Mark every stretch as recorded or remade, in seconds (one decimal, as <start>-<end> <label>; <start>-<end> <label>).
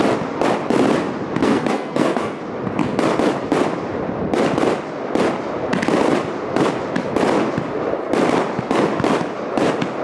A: 0.0-1.4 recorded; 1.4-2.4 remade; 2.4-10.0 recorded